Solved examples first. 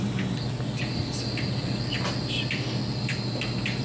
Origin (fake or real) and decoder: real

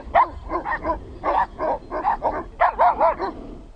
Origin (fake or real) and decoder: real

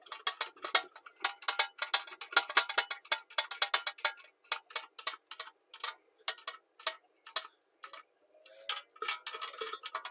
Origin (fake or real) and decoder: real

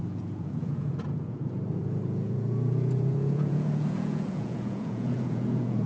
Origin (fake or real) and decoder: fake, vocoder, Vocos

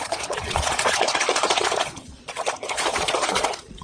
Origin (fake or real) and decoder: fake, vocoder, Vocos